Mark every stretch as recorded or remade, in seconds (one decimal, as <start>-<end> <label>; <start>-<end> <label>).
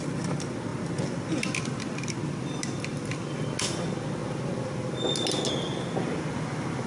0.0-6.9 recorded